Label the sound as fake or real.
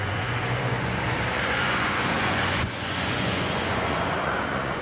fake